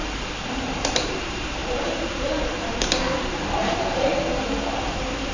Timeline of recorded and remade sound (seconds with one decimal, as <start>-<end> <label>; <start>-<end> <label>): 0.0-0.6 recorded; 0.6-4.1 remade; 4.1-4.8 recorded; 4.8-5.3 remade